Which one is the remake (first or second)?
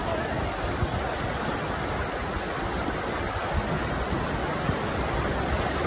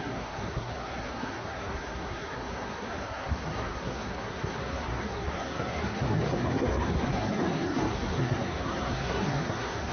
second